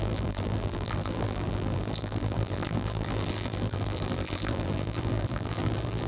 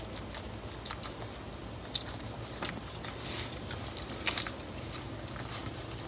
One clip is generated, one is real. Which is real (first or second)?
second